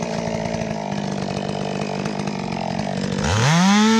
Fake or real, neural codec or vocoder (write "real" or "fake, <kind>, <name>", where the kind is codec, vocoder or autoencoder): real